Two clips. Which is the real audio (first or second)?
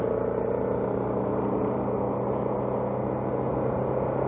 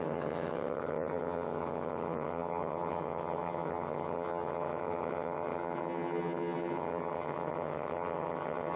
first